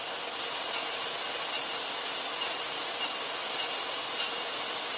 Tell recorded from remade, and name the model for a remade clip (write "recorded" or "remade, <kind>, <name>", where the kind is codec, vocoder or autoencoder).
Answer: recorded